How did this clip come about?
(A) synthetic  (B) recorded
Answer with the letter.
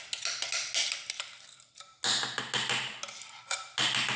B